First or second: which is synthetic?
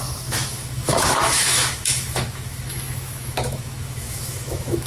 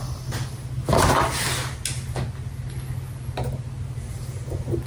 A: first